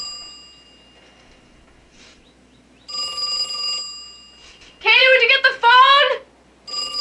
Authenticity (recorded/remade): recorded